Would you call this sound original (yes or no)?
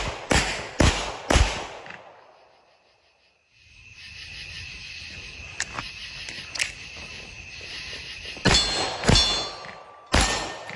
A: yes